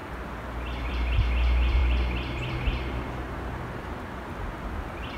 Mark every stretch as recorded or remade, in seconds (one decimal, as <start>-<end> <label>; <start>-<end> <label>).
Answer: 0.0-5.2 recorded